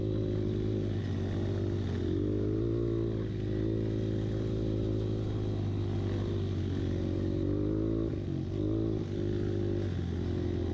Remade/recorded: recorded